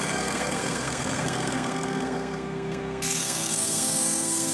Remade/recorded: remade